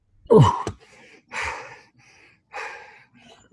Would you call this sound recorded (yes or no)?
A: yes